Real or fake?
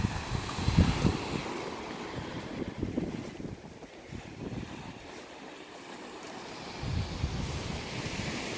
real